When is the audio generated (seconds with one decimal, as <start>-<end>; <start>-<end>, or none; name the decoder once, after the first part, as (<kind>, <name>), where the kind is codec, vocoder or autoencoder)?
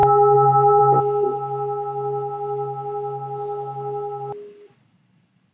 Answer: none